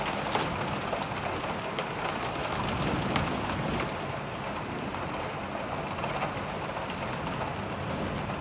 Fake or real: real